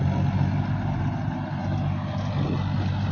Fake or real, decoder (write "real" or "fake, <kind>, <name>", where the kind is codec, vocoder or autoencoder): real